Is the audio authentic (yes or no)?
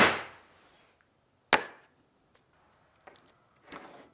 yes